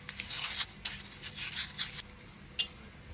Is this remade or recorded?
recorded